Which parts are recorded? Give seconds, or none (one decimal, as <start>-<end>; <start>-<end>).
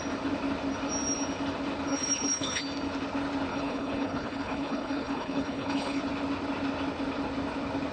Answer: 0.0-1.9; 2.6-3.5; 6.0-7.9